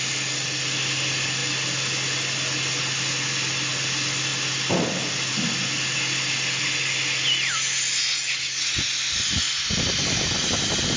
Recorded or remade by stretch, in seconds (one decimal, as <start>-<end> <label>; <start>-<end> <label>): 0.0-11.0 recorded